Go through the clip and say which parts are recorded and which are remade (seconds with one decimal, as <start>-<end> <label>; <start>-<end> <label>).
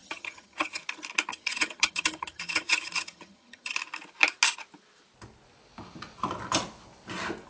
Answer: 0.0-0.8 remade; 0.8-1.3 recorded; 1.3-3.7 remade; 3.7-7.5 recorded